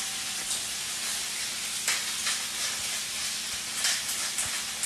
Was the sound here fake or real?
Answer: real